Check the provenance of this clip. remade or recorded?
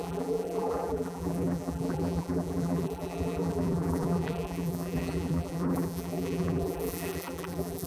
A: remade